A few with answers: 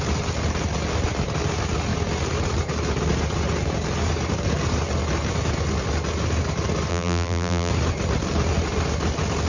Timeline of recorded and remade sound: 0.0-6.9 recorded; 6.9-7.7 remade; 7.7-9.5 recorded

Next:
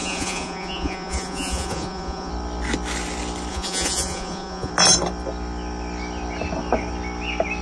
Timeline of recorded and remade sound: 0.0-2.3 remade; 2.3-3.5 recorded; 3.5-4.7 remade; 4.7-7.6 recorded